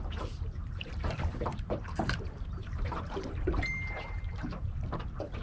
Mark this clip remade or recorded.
remade